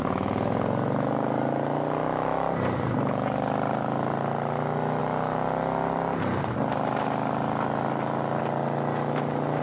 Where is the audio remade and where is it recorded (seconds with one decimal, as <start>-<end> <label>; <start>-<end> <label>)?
0.0-9.6 recorded